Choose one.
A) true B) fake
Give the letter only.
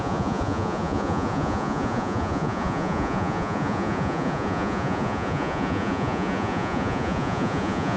B